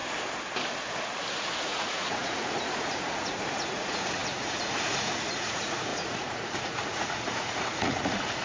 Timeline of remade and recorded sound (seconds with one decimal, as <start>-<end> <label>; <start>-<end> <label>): 0.0-1.3 recorded; 1.3-8.4 remade